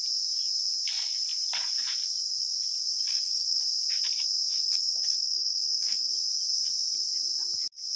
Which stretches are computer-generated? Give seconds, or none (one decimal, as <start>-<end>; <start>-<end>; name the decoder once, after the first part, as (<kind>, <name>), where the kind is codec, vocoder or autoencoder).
3.1-3.6 (codec, SNAC); 4.6-6.1